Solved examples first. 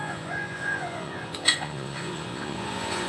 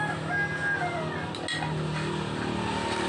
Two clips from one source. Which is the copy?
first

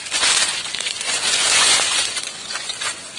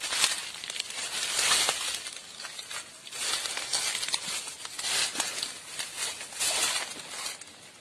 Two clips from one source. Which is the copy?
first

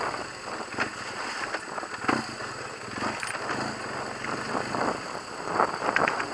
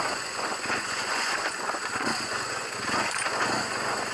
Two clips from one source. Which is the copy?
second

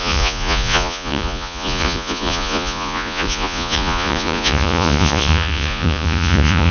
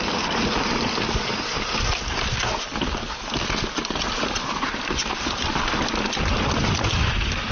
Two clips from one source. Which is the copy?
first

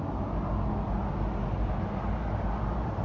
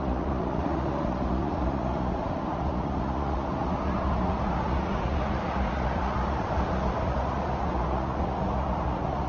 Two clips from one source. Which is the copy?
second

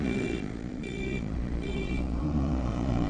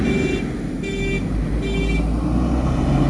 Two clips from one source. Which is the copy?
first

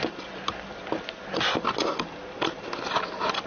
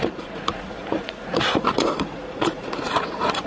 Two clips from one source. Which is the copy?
second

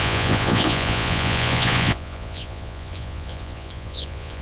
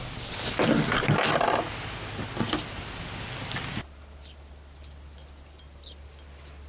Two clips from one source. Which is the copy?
first